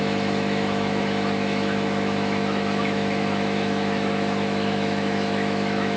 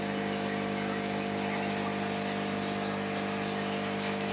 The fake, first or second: first